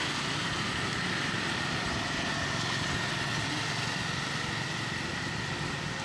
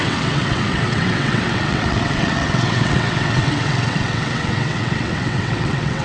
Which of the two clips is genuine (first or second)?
first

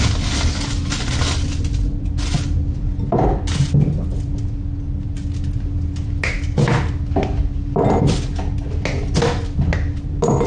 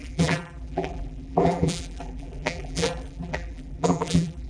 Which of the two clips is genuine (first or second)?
first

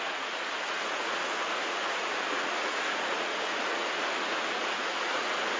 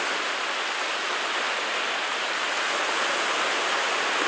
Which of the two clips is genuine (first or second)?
second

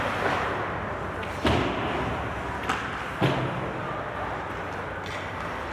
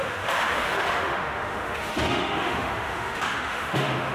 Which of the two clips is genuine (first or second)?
first